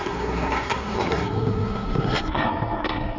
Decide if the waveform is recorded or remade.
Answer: remade